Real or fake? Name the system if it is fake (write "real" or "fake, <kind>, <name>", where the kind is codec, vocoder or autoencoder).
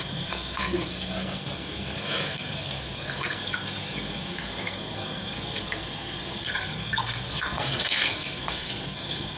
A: fake, codec, SNAC